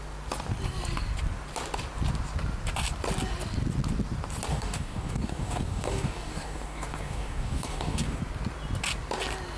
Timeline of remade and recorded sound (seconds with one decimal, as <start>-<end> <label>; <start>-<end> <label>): 0.0-4.5 recorded; 4.5-8.2 remade; 8.2-9.6 recorded